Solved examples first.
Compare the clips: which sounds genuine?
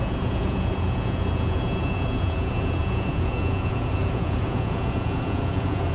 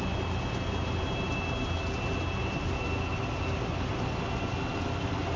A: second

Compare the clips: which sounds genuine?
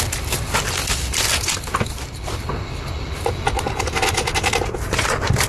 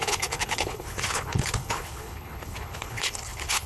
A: first